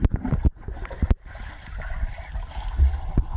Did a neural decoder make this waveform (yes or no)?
no